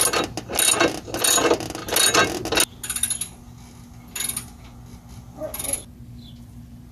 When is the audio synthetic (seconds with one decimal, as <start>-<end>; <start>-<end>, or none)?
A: none